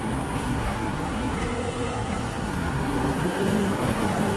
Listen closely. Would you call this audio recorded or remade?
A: remade